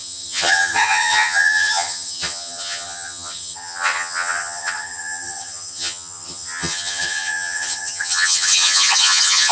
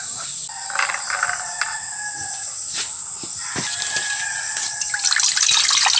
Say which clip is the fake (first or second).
first